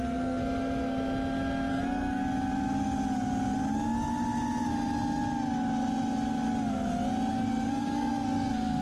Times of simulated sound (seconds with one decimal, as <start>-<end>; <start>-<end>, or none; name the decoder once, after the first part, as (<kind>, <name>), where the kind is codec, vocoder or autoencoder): 0.0-0.4 (codec, SNAC); 1.7-2.2; 7.3-8.8

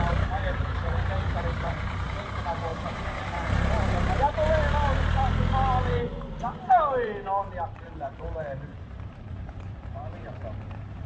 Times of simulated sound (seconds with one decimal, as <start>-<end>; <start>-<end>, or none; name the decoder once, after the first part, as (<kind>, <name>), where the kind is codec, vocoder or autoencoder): 0.0-2.7 (vocoder, BigVGAN v2); 5.4-11.1

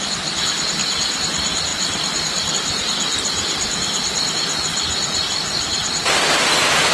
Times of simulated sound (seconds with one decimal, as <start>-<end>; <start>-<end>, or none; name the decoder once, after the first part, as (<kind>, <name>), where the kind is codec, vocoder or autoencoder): none

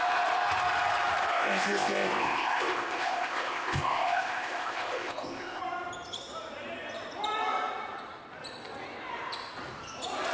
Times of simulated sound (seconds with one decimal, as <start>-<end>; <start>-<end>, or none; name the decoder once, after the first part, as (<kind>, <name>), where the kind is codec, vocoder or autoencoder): 1.3-5.6 (codec, ZipCodec)

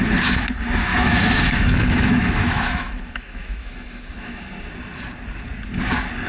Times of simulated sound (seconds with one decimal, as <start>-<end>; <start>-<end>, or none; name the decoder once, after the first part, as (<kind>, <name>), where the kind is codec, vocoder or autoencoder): 0.9-4.4 (autoencoder, DAC-VAE)

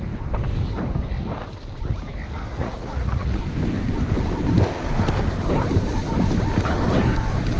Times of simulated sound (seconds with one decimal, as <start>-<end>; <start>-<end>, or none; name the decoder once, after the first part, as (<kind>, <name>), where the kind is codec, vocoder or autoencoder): 2.5-3.4 (vocoder, Vocos)

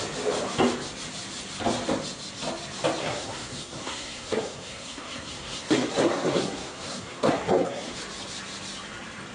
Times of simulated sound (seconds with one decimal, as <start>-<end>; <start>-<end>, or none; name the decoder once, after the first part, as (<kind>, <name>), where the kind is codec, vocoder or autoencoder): 3.0-8.0 (codec, SNAC)

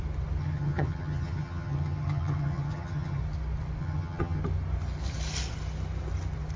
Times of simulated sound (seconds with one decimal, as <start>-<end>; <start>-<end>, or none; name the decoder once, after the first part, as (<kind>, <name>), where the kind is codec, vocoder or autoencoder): 0.4-3.2 (vocoder, HiFi-GAN); 3.8-4.4